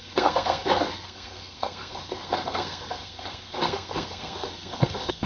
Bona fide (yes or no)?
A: no